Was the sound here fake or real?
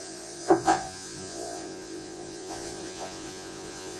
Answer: fake